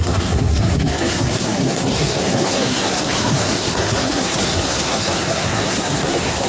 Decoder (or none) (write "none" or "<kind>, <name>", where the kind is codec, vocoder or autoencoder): codec, SNAC